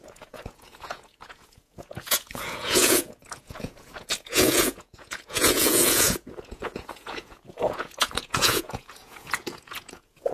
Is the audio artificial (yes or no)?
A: yes